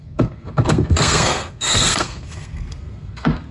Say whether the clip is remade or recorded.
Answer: remade